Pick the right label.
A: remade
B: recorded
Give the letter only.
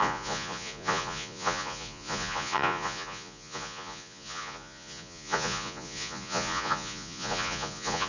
A